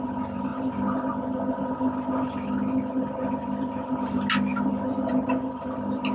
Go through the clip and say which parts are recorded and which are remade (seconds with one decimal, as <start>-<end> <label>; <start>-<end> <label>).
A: 0.0-6.1 recorded